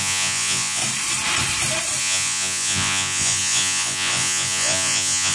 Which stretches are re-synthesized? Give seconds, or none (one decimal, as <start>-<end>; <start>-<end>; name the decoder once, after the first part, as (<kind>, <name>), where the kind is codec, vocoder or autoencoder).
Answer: 0.0-0.8 (vocoder, Vocos); 2.0-5.3